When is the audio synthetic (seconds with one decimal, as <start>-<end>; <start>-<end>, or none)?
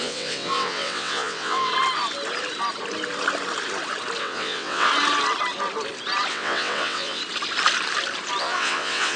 0.0-1.7; 4.2-4.9; 6.3-7.2; 8.4-9.2